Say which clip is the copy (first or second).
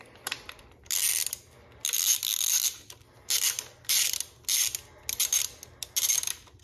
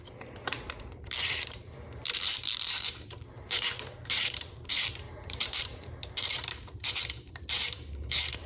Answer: second